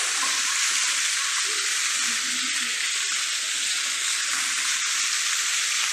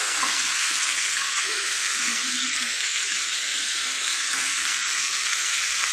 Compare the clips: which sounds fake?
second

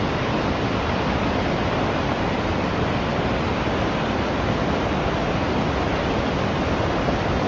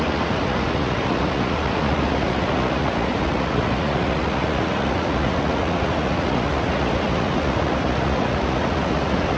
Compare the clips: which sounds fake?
second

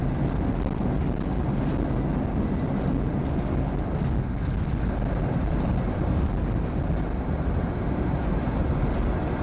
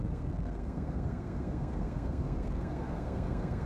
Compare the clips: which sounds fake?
second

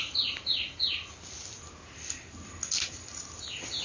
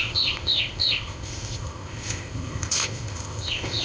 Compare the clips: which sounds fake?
second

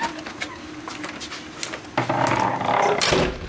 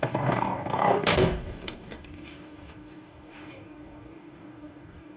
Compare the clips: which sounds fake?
second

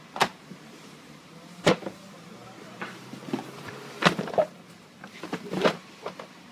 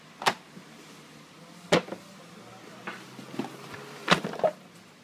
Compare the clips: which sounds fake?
first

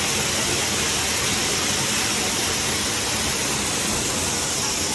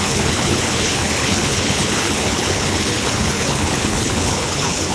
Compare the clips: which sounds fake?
second